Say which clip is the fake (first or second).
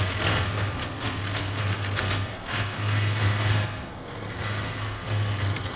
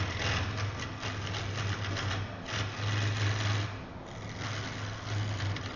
first